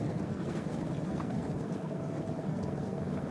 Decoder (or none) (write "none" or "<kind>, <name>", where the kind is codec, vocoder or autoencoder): codec, SNAC